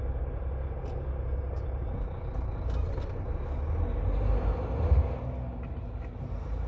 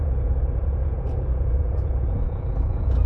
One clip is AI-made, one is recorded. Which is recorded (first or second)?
first